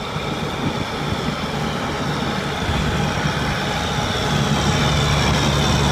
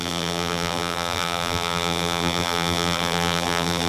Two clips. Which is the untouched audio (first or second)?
first